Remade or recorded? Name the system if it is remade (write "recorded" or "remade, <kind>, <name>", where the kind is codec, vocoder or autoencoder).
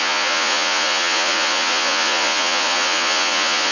remade, vocoder, Vocos